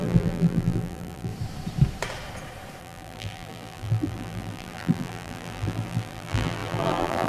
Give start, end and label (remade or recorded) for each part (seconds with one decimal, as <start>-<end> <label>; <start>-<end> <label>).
0.0-1.3 remade; 1.3-2.8 recorded; 2.8-7.3 remade